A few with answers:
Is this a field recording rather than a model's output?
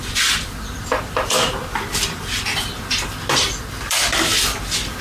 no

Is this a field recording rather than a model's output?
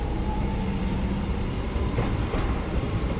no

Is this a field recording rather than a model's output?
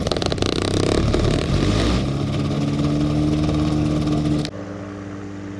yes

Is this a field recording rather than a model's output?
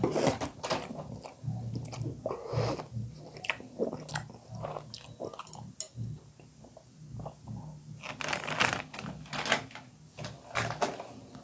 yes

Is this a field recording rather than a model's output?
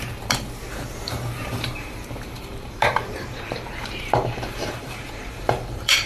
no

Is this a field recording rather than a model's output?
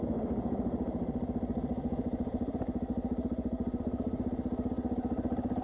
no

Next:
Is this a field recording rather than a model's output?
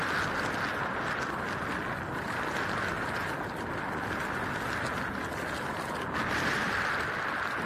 yes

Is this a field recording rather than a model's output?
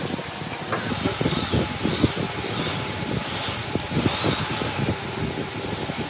yes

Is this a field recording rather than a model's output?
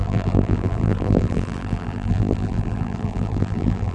no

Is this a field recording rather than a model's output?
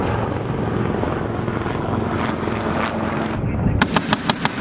yes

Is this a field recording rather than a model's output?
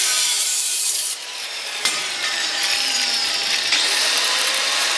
no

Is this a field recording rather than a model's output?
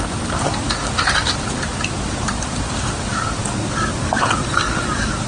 no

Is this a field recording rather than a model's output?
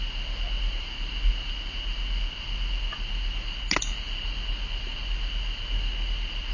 yes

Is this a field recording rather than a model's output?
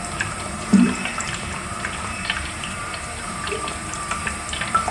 no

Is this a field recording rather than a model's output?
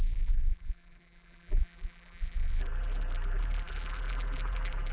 no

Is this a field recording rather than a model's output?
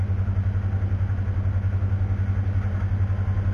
yes